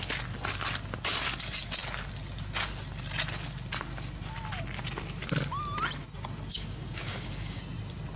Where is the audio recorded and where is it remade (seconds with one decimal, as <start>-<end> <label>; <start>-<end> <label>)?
0.0-6.5 recorded; 6.5-7.6 remade; 7.6-8.2 recorded